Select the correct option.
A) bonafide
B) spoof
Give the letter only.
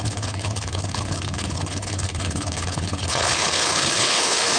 B